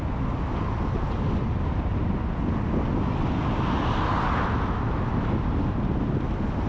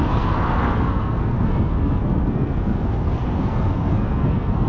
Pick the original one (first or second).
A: first